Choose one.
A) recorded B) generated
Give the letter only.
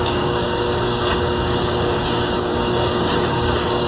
B